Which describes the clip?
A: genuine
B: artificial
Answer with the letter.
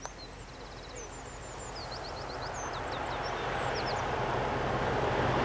A